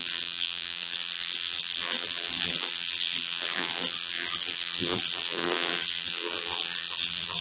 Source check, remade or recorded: remade